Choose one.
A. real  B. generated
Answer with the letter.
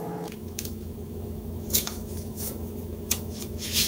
B